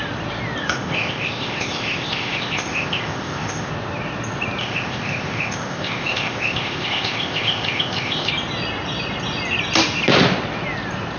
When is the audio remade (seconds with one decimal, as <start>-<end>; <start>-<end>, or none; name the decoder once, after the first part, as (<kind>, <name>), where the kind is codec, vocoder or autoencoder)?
0.6-3.7 (codec, ZipCodec); 4.6-8.3